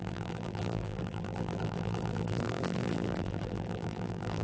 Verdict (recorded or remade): remade